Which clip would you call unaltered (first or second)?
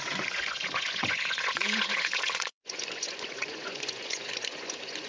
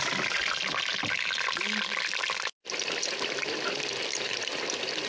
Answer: second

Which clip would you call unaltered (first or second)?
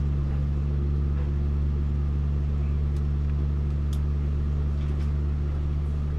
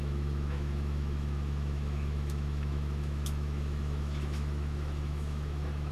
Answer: first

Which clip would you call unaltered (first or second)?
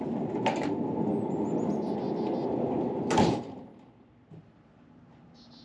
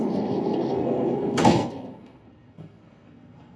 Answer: first